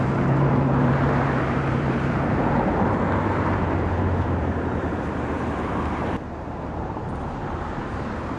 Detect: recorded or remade remade